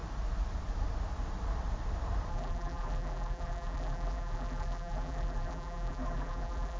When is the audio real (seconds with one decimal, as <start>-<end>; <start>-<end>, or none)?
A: 0.0-2.3